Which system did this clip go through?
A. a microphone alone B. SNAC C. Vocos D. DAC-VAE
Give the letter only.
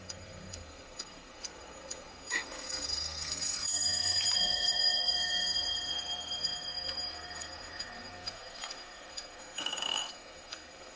B